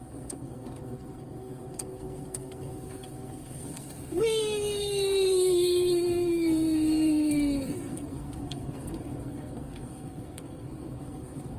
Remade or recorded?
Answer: remade